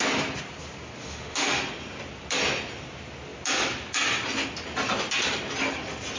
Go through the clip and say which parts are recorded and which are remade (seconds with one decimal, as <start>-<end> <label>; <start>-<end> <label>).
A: 0.0-1.0 recorded; 1.0-1.6 remade; 1.6-6.2 recorded

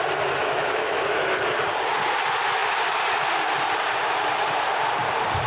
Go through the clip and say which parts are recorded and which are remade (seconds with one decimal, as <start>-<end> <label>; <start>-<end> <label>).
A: 0.0-0.4 recorded; 0.4-1.6 remade; 1.6-5.5 recorded

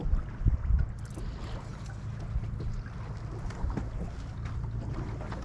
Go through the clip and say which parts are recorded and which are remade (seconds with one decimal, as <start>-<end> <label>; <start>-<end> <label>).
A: 0.0-5.4 recorded

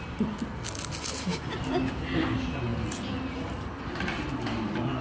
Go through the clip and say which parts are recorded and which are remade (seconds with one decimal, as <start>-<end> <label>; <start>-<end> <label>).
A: 0.0-5.0 recorded